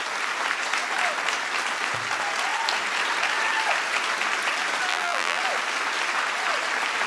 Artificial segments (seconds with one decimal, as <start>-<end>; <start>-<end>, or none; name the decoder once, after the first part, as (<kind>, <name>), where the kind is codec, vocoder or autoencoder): 4.9-5.4 (vocoder, BigVGAN v2)